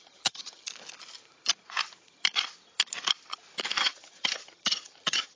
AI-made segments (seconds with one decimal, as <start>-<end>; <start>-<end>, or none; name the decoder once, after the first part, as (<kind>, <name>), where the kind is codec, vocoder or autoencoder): 0.0-0.6 (vocoder, HiFi-GAN); 3.8-5.4